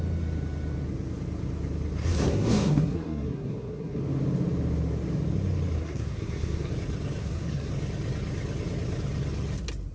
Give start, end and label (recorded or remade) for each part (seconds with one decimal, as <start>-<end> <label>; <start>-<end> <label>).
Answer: 0.0-2.0 recorded; 2.0-4.0 remade; 4.0-5.8 recorded; 5.8-6.7 remade; 6.7-7.2 recorded; 7.2-7.7 remade; 7.7-9.9 recorded